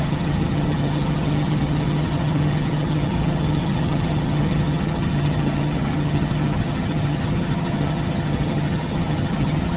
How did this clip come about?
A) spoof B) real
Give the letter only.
A